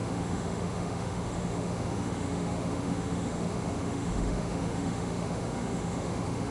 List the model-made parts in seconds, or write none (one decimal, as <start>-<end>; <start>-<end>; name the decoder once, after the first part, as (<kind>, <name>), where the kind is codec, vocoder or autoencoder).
0.0-6.5 (autoencoder, DAC-VAE)